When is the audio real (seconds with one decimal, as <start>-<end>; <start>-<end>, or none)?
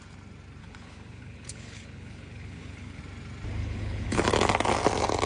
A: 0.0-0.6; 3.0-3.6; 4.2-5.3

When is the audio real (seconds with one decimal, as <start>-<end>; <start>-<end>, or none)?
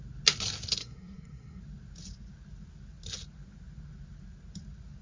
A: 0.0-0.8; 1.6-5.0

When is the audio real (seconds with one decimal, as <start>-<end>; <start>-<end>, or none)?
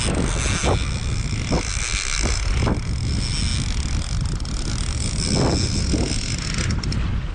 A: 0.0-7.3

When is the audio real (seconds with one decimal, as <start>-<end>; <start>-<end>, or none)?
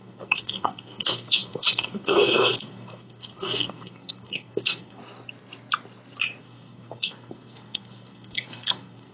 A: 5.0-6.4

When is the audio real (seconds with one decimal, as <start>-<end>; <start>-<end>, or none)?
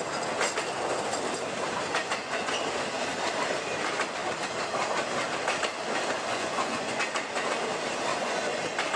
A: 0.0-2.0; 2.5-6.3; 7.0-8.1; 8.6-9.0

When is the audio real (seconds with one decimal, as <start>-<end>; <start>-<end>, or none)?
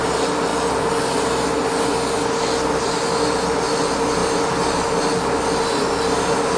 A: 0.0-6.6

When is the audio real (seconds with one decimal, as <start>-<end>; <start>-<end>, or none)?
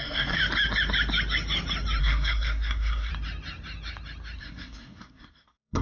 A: 0.4-2.0; 3.1-4.4